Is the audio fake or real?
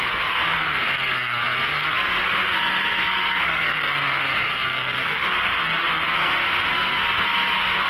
fake